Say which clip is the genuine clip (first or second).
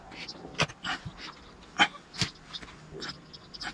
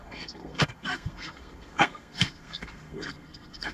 first